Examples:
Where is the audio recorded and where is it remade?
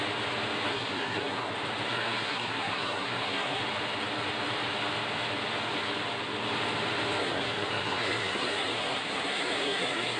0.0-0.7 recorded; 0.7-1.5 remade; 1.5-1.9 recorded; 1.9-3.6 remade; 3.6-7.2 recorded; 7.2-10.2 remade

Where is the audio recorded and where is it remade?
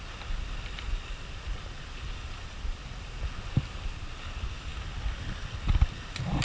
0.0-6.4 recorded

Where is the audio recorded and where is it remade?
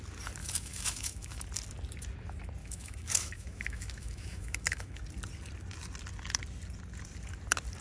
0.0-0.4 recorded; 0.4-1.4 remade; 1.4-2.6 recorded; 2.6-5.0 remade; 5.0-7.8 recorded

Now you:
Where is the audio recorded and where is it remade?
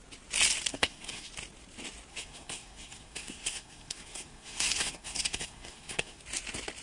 0.0-0.7 recorded; 0.7-1.3 remade; 1.3-2.1 recorded; 2.1-6.2 remade; 6.2-6.8 recorded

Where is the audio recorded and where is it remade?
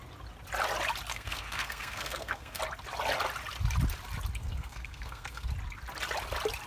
0.0-1.1 recorded; 1.1-2.6 remade; 2.6-4.4 recorded; 4.4-5.5 remade; 5.5-6.7 recorded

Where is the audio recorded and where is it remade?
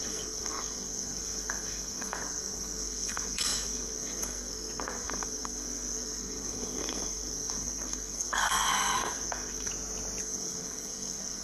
0.0-9.7 remade; 9.7-10.2 recorded; 10.2-11.4 remade